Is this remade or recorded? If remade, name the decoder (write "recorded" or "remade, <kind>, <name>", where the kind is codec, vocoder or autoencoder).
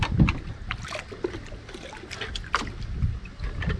recorded